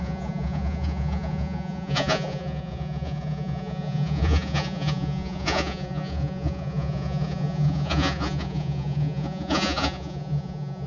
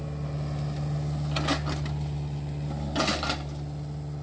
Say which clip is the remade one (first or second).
first